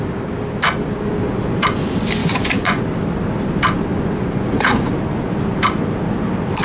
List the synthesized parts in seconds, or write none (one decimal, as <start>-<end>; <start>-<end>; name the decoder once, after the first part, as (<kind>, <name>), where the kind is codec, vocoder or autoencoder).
2.2-2.8 (vocoder, Vocos); 3.9-4.9